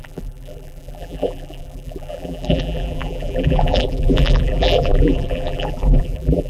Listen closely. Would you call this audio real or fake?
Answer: fake